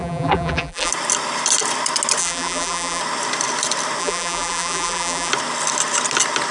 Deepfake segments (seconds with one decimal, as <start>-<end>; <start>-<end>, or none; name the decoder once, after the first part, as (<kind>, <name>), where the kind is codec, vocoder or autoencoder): 0.0-0.9 (vocoder, BigVGAN v2); 2.2-3.0; 4.0-5.3